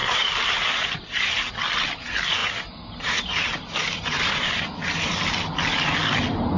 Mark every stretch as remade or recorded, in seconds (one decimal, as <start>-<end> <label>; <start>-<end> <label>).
0.0-1.5 remade; 1.5-2.4 recorded; 2.4-4.5 remade; 4.5-6.6 recorded